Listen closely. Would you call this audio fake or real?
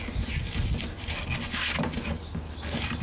real